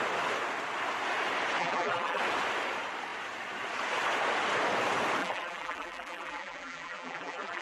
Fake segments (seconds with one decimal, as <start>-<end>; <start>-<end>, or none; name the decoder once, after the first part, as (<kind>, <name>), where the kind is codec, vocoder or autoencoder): 1.6-2.2 (vocoder, BigVGAN v2); 5.2-7.6